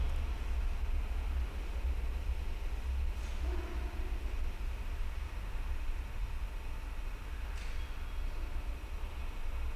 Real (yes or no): yes